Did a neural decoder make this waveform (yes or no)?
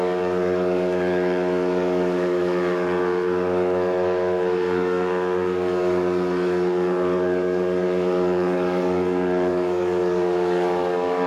yes